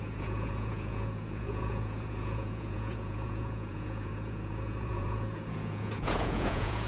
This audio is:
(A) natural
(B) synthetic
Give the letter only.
B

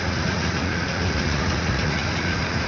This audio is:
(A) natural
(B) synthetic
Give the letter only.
B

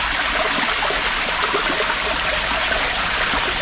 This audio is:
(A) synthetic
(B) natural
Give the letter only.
B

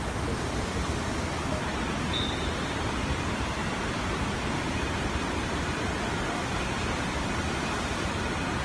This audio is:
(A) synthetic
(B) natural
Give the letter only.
B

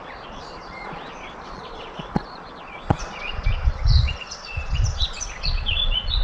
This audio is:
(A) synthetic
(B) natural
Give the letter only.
A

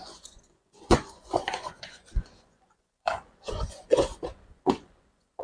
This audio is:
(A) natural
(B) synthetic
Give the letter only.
B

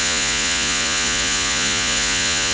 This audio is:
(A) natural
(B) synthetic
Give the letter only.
B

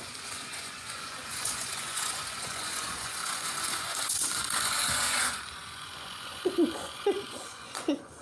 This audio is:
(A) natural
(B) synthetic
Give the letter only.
B